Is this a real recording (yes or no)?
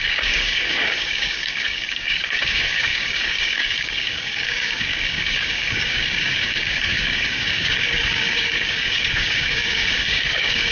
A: no